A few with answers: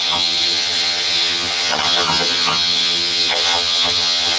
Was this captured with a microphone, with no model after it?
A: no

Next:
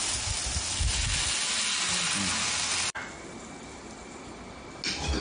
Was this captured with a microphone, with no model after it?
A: yes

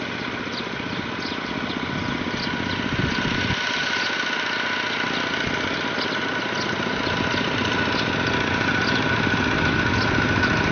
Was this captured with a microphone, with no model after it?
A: yes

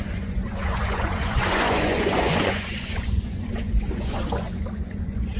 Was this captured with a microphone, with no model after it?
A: no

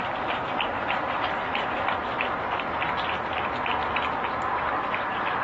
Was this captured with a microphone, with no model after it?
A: yes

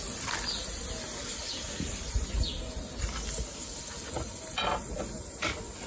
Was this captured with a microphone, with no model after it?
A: yes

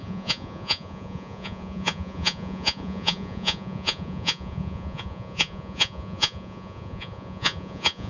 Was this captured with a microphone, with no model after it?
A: no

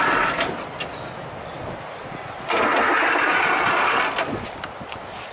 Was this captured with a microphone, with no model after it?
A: yes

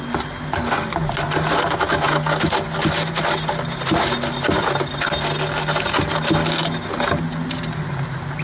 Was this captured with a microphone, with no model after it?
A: yes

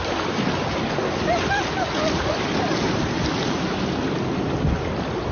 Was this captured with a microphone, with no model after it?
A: yes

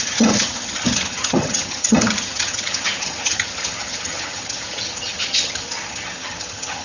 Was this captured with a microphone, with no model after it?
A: no